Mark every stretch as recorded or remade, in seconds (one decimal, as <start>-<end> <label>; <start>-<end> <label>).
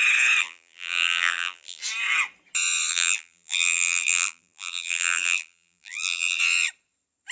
0.0-0.4 recorded; 0.4-1.8 remade; 1.8-2.9 recorded; 2.9-6.4 remade; 6.4-7.3 recorded